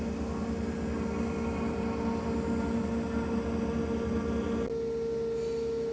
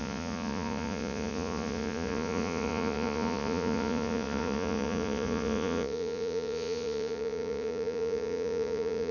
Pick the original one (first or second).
first